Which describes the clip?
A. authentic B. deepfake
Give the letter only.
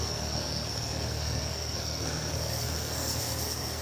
B